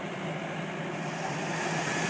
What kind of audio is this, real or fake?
real